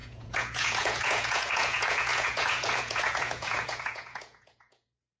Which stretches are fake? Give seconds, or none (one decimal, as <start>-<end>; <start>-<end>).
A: 0.0-5.2

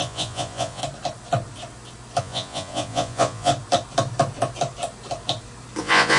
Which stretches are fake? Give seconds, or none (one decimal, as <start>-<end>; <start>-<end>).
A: 0.0-0.8; 2.2-3.5; 5.8-6.2

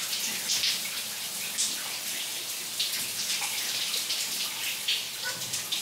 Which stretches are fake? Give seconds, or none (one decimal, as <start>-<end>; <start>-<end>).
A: none

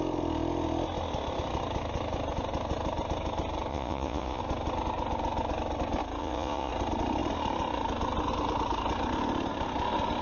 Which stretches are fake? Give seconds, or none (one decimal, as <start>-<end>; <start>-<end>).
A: 3.7-4.4; 6.2-6.7

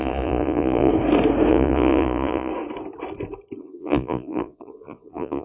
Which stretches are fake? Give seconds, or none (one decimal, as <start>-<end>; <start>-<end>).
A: 0.0-0.9; 1.5-2.5; 3.6-5.4